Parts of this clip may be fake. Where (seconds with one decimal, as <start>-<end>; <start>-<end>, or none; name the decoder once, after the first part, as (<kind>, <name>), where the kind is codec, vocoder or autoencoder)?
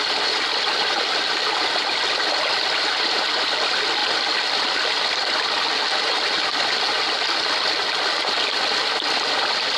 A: none